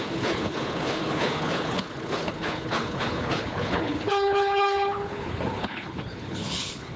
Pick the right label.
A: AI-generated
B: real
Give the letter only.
A